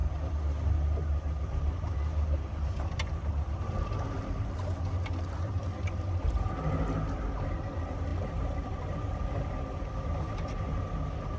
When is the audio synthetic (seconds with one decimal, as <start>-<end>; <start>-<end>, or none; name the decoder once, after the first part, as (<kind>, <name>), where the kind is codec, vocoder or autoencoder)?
8.1-9.1 (vocoder, BigVGAN v2)

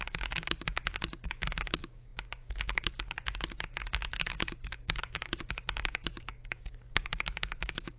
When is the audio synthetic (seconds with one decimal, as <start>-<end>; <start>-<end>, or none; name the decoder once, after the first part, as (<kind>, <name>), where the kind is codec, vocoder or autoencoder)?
0.0-8.0 (codec, DAC)

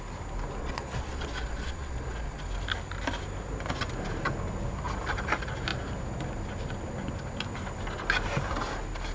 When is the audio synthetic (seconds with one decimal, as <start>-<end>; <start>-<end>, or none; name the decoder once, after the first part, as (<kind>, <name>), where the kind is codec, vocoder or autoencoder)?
0.6-2.4 (vocoder, Vocos)